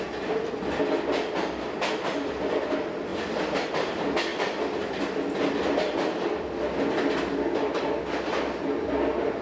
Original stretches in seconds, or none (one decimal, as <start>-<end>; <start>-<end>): 0.0-9.4